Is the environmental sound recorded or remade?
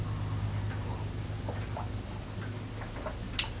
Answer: recorded